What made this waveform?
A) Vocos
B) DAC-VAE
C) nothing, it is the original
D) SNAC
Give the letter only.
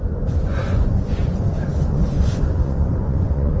A